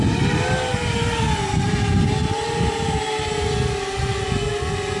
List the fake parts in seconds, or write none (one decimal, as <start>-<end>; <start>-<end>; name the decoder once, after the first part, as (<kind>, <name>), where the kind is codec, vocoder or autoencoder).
none